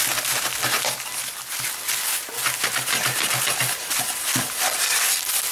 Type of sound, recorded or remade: recorded